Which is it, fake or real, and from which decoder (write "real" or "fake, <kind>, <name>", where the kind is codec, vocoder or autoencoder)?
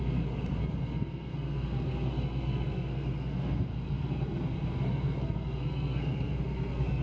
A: fake, codec, SNAC